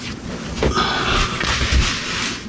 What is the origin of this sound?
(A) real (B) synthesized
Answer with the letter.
A